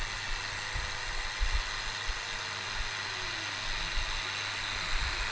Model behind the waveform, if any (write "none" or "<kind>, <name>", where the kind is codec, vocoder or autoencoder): none